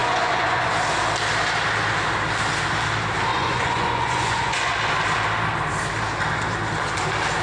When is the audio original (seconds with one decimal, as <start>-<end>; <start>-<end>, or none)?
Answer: 0.7-3.3; 4.7-7.4